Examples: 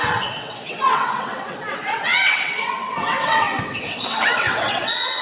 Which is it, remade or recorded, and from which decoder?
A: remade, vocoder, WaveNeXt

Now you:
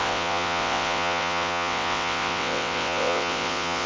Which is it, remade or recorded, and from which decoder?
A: remade, vocoder, WaveNeXt